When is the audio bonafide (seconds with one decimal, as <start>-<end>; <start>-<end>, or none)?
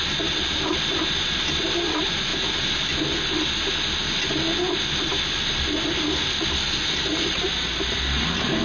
0.0-8.6